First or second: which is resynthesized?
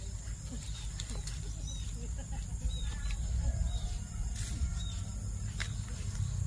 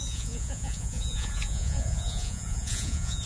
second